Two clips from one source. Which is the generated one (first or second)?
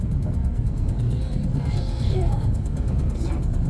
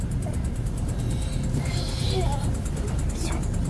first